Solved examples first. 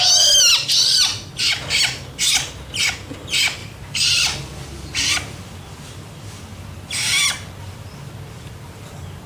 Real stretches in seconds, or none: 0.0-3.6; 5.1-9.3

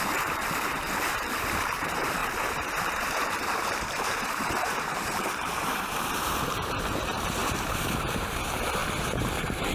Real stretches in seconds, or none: 7.4-8.4

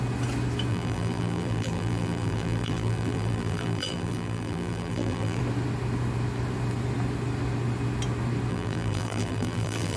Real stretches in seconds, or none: 0.0-0.7; 5.4-8.5